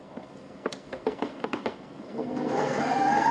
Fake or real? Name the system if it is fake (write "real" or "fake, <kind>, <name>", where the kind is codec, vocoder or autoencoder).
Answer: fake, codec, SNAC